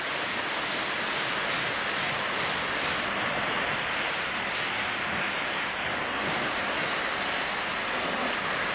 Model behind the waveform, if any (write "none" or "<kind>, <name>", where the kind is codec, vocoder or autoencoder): none